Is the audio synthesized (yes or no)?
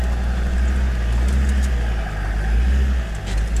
no